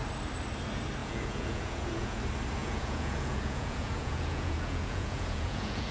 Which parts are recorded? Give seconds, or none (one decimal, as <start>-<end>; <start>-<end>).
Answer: 0.0-1.0; 2.2-2.6